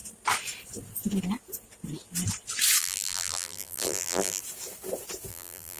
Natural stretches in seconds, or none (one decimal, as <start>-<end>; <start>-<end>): 0.0-2.8; 4.4-5.3